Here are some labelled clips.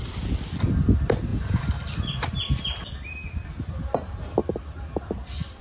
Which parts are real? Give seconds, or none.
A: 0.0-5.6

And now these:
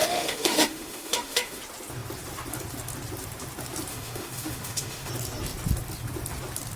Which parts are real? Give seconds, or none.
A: 1.6-3.9; 5.1-6.8

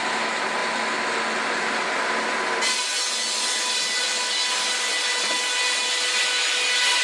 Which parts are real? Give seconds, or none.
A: 0.0-7.0